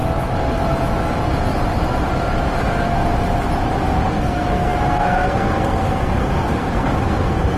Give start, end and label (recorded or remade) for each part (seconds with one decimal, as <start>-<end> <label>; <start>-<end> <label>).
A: 0.0-4.1 recorded; 4.1-7.6 remade